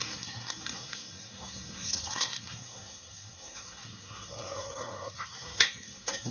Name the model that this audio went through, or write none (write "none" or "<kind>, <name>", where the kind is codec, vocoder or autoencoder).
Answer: codec, SNAC